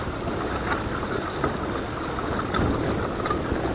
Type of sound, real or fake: real